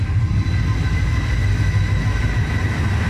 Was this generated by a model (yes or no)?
no